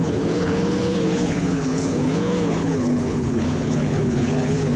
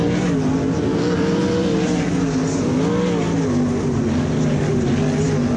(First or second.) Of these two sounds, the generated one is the first